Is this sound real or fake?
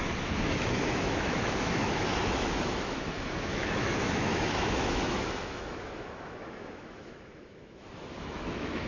fake